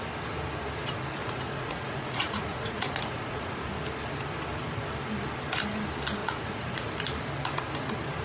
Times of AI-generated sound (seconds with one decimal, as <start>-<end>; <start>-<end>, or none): 1.2-3.7; 6.2-6.9